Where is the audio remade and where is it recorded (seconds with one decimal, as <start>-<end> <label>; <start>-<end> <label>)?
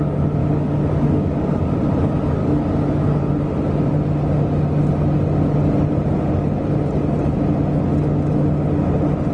0.0-0.4 recorded; 0.4-1.6 remade; 1.6-2.4 recorded; 2.4-3.2 remade; 3.2-9.3 recorded